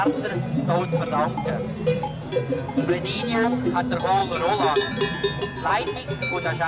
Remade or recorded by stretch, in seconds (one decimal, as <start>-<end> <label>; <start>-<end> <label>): 0.0-6.7 recorded